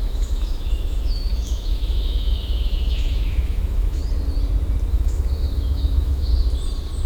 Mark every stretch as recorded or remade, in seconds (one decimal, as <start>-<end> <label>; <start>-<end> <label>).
0.0-4.0 remade; 4.0-4.9 recorded; 4.9-6.3 remade; 6.3-7.1 recorded